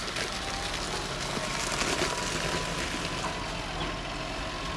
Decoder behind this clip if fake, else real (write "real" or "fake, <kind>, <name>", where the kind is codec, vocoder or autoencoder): real